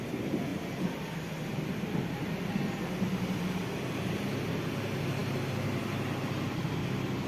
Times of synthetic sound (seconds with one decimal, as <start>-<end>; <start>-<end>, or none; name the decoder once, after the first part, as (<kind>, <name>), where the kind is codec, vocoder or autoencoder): 0.5-3.6 (vocoder, BigVGAN v2)